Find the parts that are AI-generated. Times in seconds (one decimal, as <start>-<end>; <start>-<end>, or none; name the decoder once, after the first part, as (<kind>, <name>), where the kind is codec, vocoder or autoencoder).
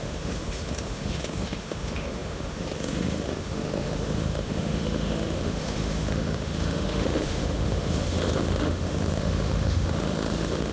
0.0-10.7 (autoencoder, DAC-VAE)